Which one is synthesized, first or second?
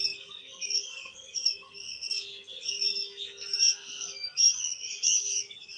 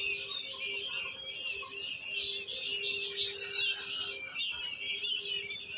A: first